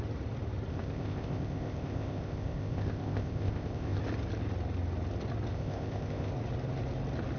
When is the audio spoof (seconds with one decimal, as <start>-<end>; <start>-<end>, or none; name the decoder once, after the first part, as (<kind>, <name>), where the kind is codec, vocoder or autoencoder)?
0.7-4.0 (codec, ZipCodec); 5.5-6.3